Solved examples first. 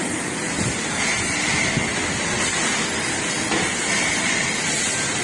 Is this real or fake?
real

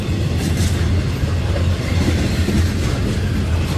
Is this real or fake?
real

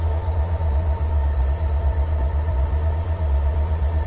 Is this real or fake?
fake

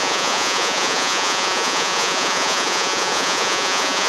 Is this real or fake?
fake